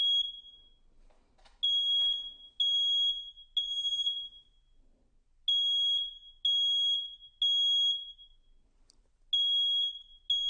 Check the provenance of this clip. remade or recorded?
recorded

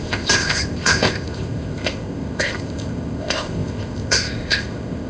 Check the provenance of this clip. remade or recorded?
remade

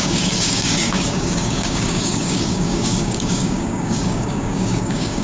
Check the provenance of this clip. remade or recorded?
remade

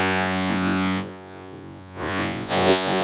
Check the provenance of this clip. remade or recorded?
remade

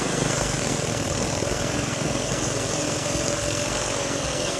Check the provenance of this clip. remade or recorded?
remade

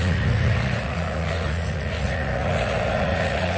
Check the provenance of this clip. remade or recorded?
remade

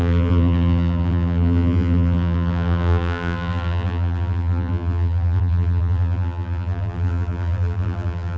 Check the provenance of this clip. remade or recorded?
remade